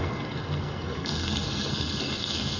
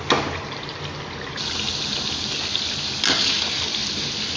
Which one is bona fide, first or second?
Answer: second